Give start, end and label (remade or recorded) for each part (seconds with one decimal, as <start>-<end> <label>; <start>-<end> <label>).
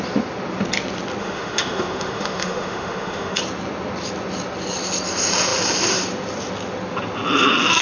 0.0-1.2 recorded; 1.2-3.4 remade; 3.4-7.8 recorded